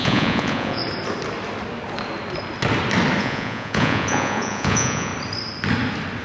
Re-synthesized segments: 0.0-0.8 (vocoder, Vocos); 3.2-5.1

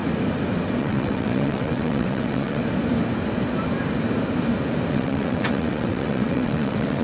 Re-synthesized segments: 0.8-2.6 (vocoder, WaveNeXt); 4.9-7.0

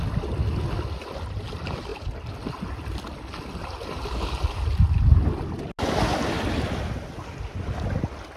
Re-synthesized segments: none

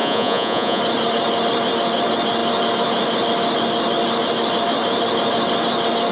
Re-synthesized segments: 0.0-0.8 (vocoder, Vocos)

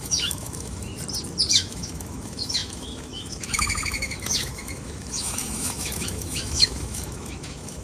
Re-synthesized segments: 0.0-0.9 (autoencoder, DAC-VAE); 1.5-7.8

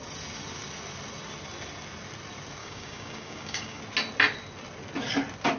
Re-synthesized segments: 2.6-3.8 (codec, DAC)